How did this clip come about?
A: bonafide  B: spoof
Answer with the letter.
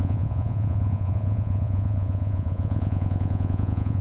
B